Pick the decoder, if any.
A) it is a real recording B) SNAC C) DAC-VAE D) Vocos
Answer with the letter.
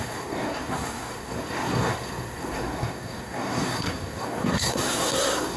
B